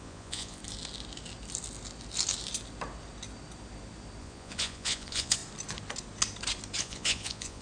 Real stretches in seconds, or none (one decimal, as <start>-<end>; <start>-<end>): 0.6-4.2; 5.4-6.8